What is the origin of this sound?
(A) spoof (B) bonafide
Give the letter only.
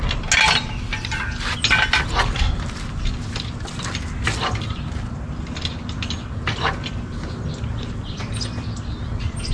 B